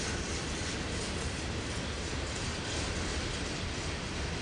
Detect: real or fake real